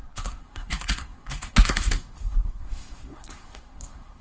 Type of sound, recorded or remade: remade